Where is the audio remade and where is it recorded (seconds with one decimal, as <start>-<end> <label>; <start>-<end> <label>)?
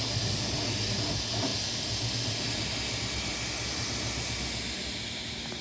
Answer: 0.0-5.6 recorded